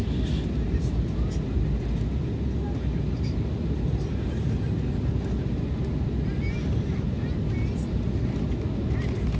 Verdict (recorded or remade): recorded